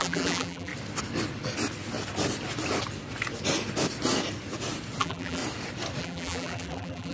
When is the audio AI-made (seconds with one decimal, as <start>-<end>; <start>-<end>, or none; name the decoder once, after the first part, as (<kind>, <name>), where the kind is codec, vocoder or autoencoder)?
0.0-0.7 (vocoder, BigVGAN v2); 5.0-5.4; 6.0-7.1